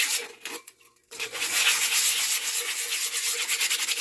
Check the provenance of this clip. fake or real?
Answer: fake